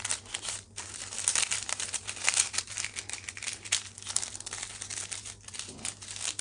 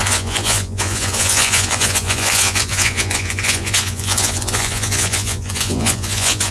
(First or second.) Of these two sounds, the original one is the first